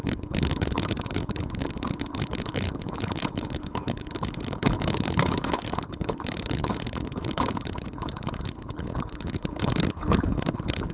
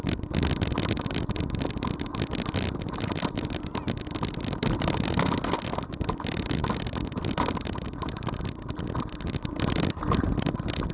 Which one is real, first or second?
second